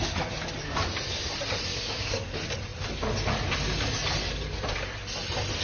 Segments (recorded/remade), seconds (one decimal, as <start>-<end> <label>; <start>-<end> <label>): 0.0-1.7 recorded; 1.7-2.3 remade; 2.3-5.6 recorded

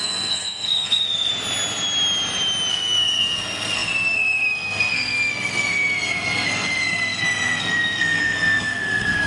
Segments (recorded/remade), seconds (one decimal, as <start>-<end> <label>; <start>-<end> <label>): 0.0-1.3 remade; 1.3-2.7 recorded; 2.7-9.3 remade